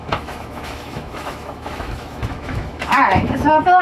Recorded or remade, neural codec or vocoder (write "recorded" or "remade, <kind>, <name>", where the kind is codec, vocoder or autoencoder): remade, autoencoder, DAC-VAE